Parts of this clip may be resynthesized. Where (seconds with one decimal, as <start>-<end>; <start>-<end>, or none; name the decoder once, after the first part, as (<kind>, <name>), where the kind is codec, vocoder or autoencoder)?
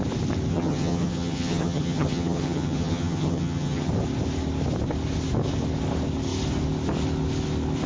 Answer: 0.5-3.9 (vocoder, HiFi-GAN)